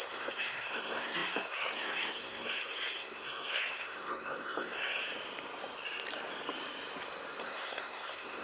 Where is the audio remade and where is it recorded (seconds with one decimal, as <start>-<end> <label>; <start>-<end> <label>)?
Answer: 0.0-5.0 remade; 5.0-7.4 recorded; 7.4-8.4 remade